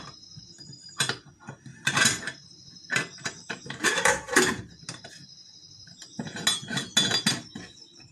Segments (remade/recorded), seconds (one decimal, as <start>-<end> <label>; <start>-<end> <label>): 0.0-1.7 recorded; 1.7-4.4 remade; 4.4-8.1 recorded